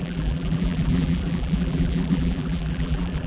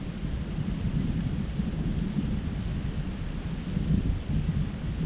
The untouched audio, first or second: second